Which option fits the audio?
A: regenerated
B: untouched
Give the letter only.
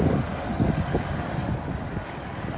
B